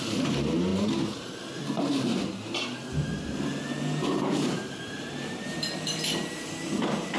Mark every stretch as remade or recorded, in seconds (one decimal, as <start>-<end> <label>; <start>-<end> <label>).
0.0-0.7 recorded; 0.7-1.6 remade; 1.6-2.8 recorded; 2.8-7.2 remade